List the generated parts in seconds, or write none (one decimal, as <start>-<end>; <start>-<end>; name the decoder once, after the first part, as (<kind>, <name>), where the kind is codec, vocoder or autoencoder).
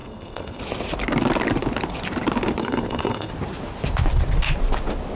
0.0-0.6 (codec, SNAC); 2.6-3.3